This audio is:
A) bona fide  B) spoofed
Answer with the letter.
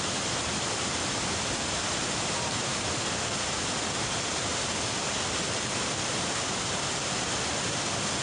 A